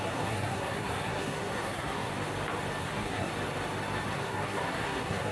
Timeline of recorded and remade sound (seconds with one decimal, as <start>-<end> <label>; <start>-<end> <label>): 0.0-2.1 remade; 2.1-2.8 recorded; 2.8-3.3 remade; 3.3-4.1 recorded; 4.1-5.3 remade